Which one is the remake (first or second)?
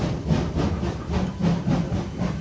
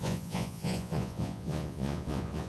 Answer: second